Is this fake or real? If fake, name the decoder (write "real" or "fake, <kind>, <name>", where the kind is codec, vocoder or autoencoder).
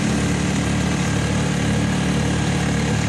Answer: real